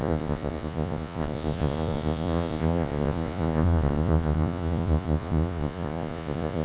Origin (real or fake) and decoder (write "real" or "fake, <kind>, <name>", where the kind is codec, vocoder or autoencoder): fake, vocoder, Vocos